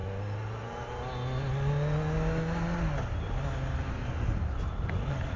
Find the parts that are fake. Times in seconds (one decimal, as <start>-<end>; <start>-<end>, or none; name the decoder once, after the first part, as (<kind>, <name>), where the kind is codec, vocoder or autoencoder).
none